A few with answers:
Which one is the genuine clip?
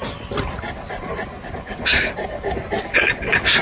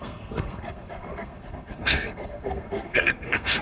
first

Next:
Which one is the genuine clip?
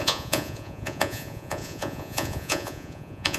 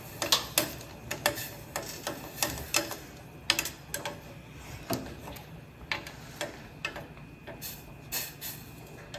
second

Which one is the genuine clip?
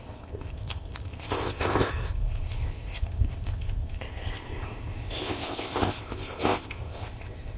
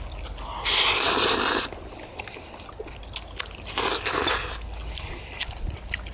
second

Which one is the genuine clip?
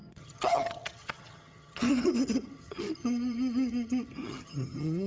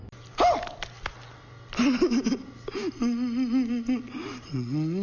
second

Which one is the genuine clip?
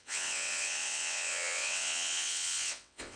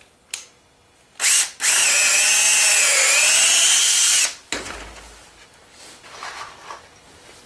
second